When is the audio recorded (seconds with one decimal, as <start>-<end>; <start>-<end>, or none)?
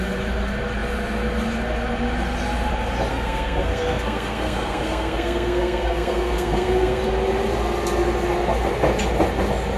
0.0-3.1; 7.0-9.8